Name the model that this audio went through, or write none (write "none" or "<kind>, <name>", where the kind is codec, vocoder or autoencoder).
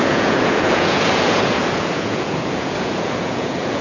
vocoder, Vocos